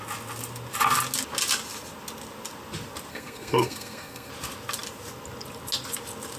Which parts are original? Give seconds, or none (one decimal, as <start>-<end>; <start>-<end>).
0.0-3.1; 4.3-6.4